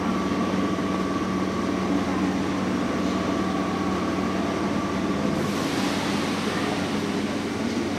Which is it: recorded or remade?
recorded